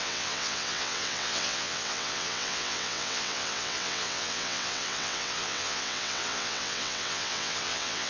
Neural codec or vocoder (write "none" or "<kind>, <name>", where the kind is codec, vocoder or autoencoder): vocoder, WaveNeXt